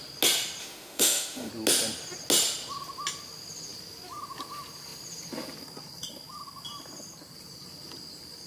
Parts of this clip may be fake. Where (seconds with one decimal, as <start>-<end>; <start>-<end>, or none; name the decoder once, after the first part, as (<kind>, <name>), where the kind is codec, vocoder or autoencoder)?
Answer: 0.6-1.5 (autoencoder, DAC-VAE)